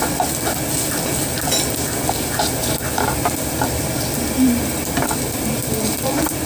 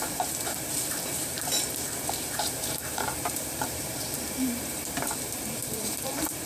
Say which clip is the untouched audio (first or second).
first